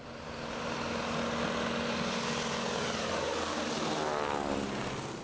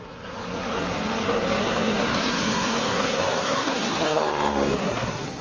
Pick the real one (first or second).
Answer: first